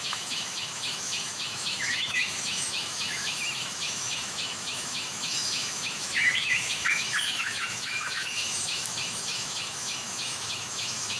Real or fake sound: fake